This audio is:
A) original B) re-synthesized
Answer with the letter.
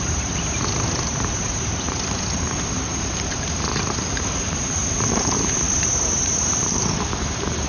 B